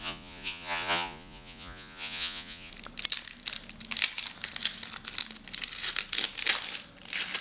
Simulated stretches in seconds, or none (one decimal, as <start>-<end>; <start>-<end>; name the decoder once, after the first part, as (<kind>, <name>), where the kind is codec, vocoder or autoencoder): 0.0-2.7 (vocoder, Vocos)